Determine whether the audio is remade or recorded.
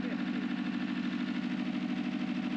recorded